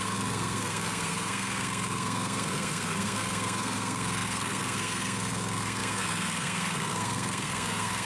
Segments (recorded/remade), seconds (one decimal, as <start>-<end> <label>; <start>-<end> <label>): 0.0-8.1 remade